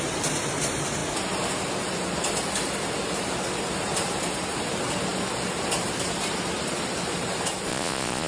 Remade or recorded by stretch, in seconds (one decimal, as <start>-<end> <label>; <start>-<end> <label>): 0.0-7.7 recorded; 7.7-8.3 remade